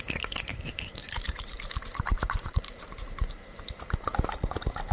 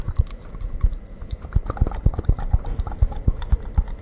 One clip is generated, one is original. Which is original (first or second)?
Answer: second